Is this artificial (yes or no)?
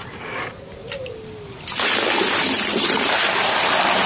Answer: no